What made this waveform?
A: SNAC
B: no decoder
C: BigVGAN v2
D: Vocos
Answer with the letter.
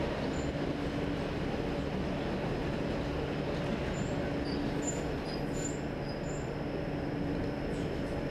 B